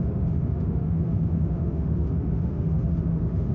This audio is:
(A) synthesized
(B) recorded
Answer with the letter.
A